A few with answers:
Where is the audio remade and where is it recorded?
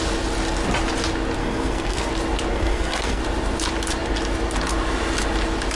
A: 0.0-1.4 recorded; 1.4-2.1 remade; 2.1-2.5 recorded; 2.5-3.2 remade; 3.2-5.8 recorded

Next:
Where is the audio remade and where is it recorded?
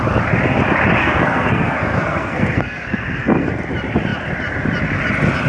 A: 0.0-1.0 recorded; 1.0-3.5 remade; 3.5-5.5 recorded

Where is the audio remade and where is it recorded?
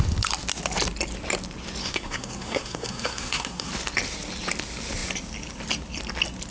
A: 0.0-1.8 recorded; 1.8-3.7 remade; 3.7-6.5 recorded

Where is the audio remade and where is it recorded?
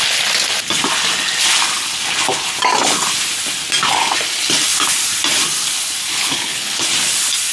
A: 0.0-6.1 recorded; 6.1-6.8 remade; 6.8-7.5 recorded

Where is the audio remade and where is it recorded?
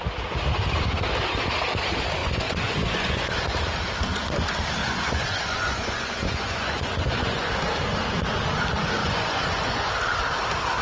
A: 0.0-2.2 recorded; 2.2-3.3 remade; 3.3-4.8 recorded; 4.8-7.5 remade; 7.5-9.0 recorded; 9.0-9.9 remade; 9.9-10.8 recorded